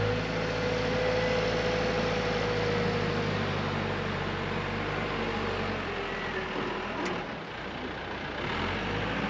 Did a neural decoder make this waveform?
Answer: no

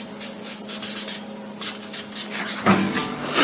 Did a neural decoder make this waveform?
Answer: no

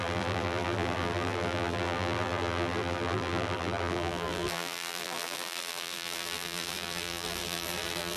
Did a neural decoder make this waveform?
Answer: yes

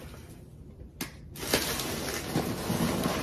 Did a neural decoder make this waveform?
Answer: no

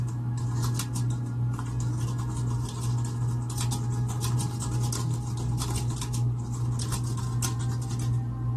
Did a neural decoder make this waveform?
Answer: no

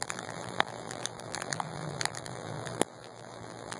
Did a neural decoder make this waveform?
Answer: yes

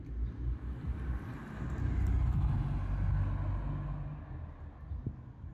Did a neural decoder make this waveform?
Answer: no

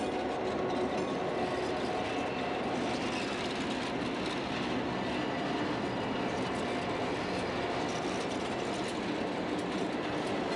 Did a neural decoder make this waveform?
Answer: no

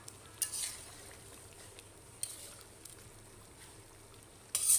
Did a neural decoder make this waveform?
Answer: no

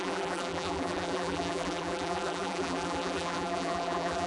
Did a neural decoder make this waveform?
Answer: yes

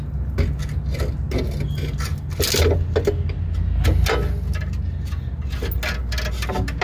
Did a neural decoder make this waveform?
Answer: no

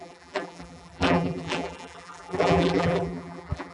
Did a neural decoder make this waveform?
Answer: yes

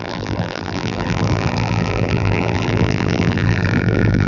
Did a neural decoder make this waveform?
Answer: yes